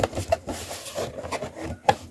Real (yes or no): yes